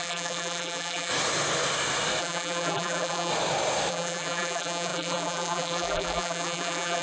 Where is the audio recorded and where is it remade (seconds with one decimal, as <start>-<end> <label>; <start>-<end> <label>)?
0.0-1.1 remade; 1.1-2.2 recorded; 2.2-3.3 remade; 3.3-3.9 recorded; 3.9-7.0 remade